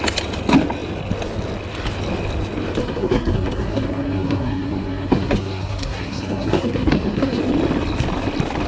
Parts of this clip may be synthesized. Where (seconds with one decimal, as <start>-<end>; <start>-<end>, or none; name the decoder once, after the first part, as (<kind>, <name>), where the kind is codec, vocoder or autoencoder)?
2.8-7.4 (codec, SNAC)